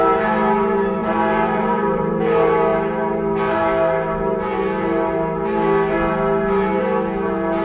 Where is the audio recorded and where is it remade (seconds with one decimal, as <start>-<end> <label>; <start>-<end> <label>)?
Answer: 0.0-1.0 recorded; 1.0-2.2 remade; 2.2-7.6 recorded